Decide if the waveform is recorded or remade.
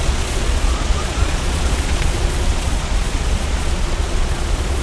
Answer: remade